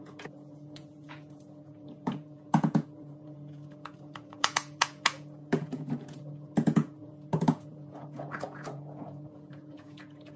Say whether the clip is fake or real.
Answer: fake